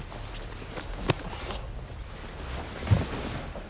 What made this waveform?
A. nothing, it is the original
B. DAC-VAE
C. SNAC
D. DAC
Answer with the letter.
A